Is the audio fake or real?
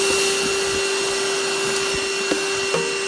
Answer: real